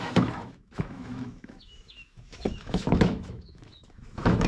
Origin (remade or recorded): remade